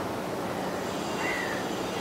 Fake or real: real